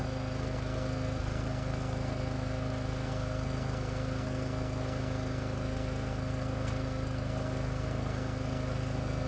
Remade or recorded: remade